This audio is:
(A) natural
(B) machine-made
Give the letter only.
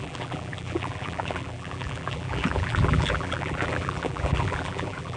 B